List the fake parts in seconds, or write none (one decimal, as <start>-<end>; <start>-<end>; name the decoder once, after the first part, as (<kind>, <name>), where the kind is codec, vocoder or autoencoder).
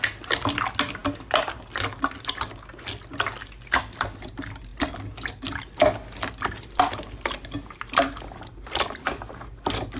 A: none